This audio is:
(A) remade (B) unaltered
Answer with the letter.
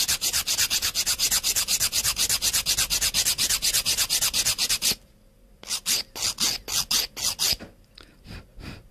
B